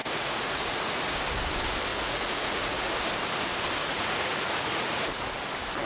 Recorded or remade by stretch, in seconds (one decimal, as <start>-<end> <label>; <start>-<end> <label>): 0.0-1.0 remade; 1.0-1.9 recorded; 1.9-2.9 remade; 2.9-3.8 recorded; 3.8-5.3 remade; 5.3-5.9 recorded